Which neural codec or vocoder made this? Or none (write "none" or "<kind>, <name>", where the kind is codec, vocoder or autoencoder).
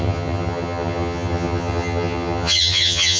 vocoder, HiFi-GAN